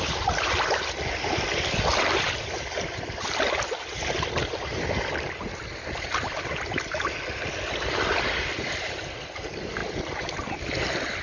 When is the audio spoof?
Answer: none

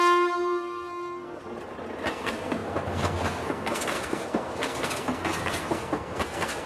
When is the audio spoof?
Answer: 0.0-1.4 (codec, SNAC); 2.1-6.7

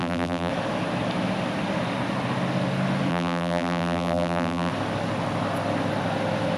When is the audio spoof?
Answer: 0.0-0.5 (vocoder, BigVGAN v2); 3.1-4.7

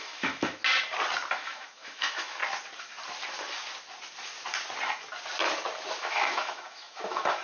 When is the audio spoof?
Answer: 0.0-0.6 (autoencoder, DAC-VAE); 1.3-2.4; 6.0-7.4

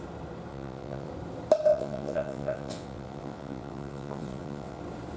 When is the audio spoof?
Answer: 0.5-1.1 (vocoder, WaveNeXt); 1.7-4.8

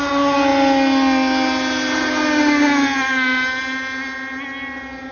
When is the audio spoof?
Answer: none

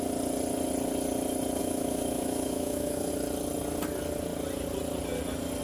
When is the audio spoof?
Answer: 1.6-3.1 (autoencoder, DAC-VAE)

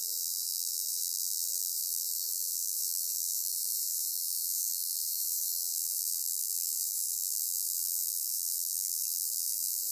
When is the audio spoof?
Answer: 0.0-9.9 (vocoder, BigVGAN v2)